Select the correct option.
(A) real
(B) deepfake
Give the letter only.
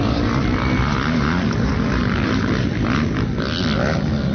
A